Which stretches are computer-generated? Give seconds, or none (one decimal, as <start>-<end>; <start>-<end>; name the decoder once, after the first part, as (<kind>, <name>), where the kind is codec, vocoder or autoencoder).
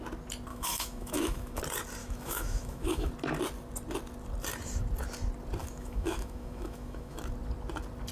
0.5-1.6 (autoencoder, DAC-VAE); 2.0-3.1; 5.6-7.2